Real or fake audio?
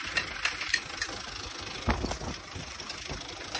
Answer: real